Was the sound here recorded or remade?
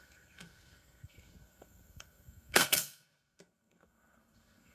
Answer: remade